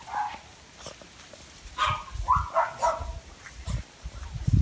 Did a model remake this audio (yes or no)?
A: no